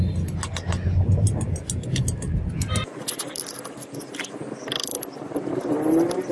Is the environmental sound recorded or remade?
recorded